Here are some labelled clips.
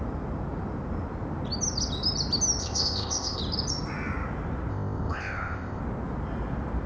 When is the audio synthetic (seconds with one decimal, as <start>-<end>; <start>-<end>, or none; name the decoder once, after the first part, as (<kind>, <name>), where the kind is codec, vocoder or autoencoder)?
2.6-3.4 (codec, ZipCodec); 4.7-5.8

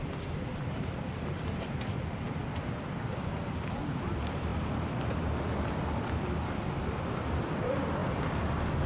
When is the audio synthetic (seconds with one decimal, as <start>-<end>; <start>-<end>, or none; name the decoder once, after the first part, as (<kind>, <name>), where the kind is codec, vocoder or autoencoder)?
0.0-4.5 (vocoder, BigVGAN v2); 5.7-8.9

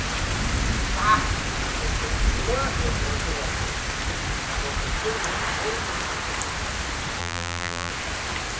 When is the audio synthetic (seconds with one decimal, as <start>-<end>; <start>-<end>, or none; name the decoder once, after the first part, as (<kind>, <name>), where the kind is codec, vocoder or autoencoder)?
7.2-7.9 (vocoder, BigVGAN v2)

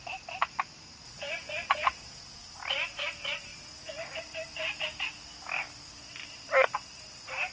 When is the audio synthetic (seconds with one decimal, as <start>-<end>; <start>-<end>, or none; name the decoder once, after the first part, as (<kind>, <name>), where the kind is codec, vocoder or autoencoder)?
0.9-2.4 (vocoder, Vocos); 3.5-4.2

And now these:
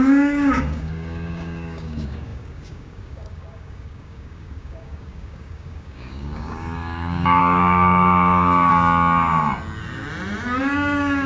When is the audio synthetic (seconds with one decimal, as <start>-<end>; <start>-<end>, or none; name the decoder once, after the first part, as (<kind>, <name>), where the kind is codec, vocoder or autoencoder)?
0.0-8.7 (codec, DAC); 10.6-11.3

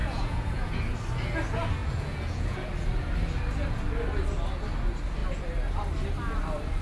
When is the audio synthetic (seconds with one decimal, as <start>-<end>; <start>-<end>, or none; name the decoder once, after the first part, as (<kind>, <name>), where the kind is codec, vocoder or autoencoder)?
0.0-0.8 (vocoder, Vocos); 1.8-2.7

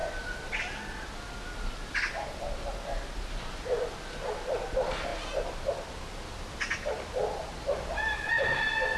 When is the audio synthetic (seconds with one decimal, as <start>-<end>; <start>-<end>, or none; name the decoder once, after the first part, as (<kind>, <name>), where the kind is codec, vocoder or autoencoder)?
none